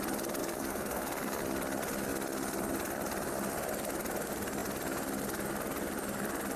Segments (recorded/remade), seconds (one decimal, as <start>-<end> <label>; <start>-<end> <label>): 0.0-0.4 recorded; 0.4-1.4 remade; 1.4-6.6 recorded